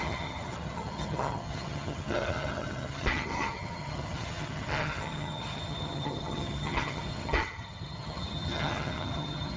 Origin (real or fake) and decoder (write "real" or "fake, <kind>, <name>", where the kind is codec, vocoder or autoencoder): fake, vocoder, HiFi-GAN